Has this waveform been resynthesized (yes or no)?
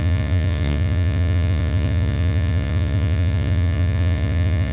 yes